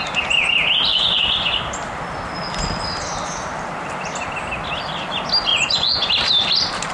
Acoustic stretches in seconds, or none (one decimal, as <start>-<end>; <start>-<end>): 0.0-0.9; 1.6-5.5; 6.1-6.9